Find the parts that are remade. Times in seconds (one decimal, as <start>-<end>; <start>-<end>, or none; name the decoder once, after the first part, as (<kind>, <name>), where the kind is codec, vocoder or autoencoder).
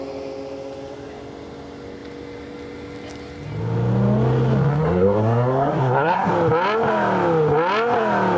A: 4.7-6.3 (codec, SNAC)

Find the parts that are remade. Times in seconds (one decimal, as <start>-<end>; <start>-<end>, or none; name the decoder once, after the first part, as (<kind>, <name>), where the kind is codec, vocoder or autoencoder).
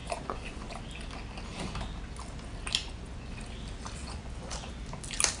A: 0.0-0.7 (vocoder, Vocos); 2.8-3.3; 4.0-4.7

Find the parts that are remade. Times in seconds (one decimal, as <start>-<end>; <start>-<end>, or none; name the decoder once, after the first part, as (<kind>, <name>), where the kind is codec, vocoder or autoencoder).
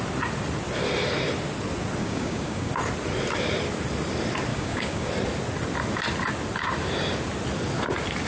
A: 2.0-2.7 (codec, DAC); 4.5-5.1